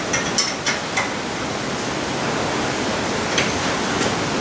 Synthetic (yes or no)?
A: no